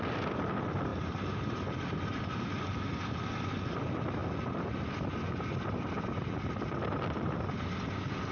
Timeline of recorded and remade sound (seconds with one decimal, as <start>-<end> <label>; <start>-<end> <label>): 0.0-0.9 recorded; 0.9-3.3 remade; 3.3-8.3 recorded